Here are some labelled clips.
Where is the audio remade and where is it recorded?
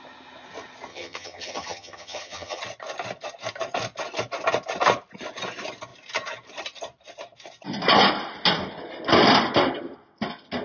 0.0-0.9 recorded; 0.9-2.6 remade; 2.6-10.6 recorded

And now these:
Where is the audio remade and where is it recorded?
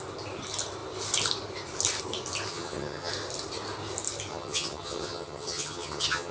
0.0-2.5 recorded; 2.5-3.1 remade; 3.1-4.3 recorded; 4.3-6.3 remade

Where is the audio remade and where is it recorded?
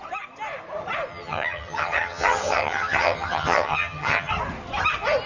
0.0-1.1 recorded; 1.1-4.3 remade; 4.3-5.3 recorded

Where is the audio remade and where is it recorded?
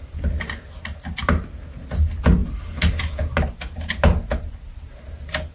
0.0-5.5 recorded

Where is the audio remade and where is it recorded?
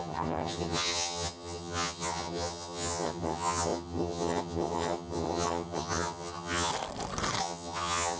0.0-6.7 remade; 6.7-7.4 recorded; 7.4-8.2 remade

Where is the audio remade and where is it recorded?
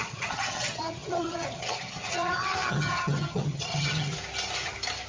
0.0-4.1 remade; 4.1-5.1 recorded